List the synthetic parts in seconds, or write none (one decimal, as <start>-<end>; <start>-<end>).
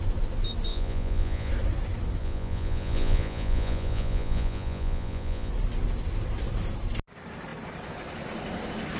0.7-1.5; 2.2-5.5